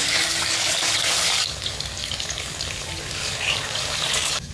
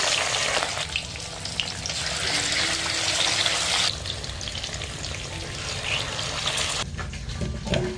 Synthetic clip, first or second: first